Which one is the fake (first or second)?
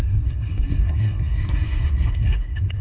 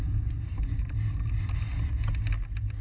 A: first